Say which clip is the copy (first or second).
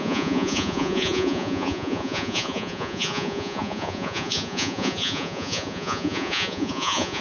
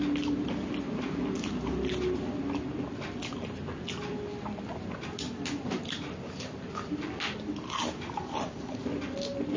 first